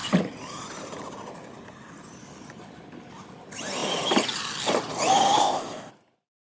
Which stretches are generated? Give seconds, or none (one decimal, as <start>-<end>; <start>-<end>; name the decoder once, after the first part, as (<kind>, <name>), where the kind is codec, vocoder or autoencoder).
5.4-5.9 (codec, ZipCodec)